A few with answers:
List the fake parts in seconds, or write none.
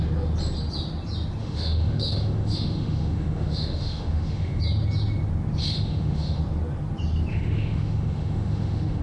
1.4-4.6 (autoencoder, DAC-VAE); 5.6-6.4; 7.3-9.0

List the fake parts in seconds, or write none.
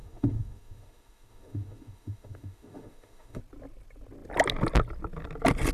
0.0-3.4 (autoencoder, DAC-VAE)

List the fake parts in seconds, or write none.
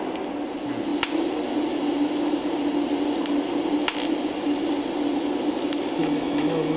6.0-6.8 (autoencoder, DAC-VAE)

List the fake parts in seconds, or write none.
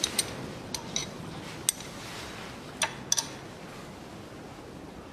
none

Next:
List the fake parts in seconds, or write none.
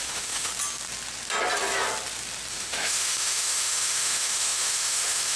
0.0-0.5 (autoencoder, DAC-VAE); 2.5-5.4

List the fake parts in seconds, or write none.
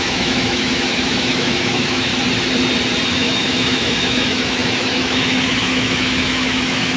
0.0-2.1 (autoencoder, DAC-VAE); 3.1-7.0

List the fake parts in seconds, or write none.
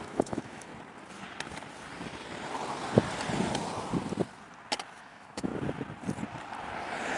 0.0-0.7 (autoencoder, DAC-VAE); 5.0-5.5